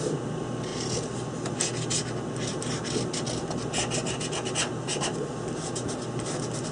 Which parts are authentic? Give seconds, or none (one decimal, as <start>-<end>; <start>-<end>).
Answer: 0.0-6.7